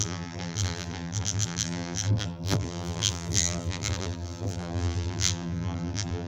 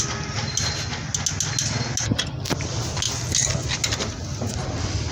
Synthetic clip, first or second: first